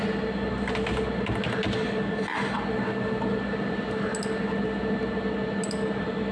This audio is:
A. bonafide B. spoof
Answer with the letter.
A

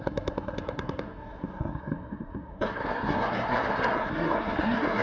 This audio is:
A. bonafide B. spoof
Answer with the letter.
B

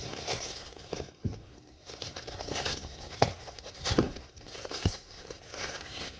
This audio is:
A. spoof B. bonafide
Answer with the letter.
A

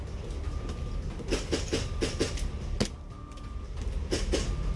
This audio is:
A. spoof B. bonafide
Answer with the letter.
B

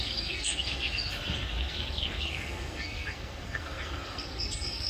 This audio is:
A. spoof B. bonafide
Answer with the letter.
A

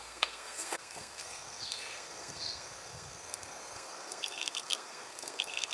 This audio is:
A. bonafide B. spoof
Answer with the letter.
B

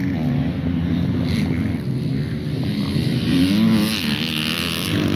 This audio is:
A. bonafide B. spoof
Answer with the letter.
A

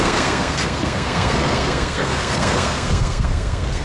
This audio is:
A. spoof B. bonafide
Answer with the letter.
A